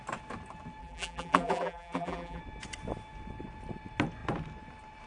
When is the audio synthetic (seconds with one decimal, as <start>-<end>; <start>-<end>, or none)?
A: 0.8-2.4